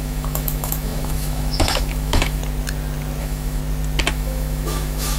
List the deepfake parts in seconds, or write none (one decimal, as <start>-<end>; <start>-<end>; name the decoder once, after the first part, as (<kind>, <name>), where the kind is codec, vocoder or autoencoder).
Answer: 0.0-2.4 (autoencoder, DAC-VAE); 3.2-3.6; 4.1-5.2